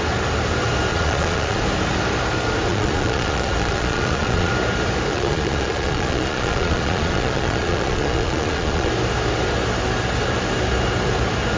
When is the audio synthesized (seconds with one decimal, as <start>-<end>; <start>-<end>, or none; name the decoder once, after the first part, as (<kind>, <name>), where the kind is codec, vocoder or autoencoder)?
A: 0.9-1.6 (vocoder, Vocos); 2.7-4.5; 5.1-8.9